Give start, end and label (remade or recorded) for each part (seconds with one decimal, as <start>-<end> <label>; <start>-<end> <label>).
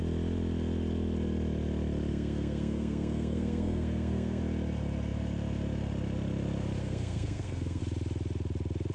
0.0-2.1 recorded; 2.1-4.4 remade; 4.4-6.8 recorded; 6.8-7.8 remade; 7.8-8.9 recorded